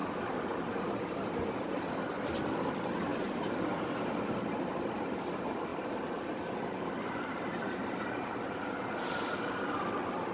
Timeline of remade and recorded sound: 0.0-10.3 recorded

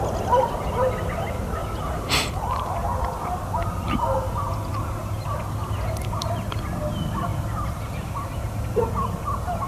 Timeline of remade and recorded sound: 0.0-9.7 recorded